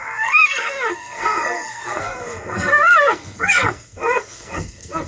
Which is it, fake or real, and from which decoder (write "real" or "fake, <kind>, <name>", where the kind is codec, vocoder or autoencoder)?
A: fake, codec, SNAC